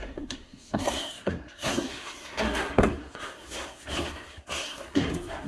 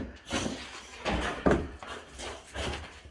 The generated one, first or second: first